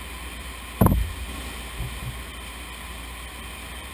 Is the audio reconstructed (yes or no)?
no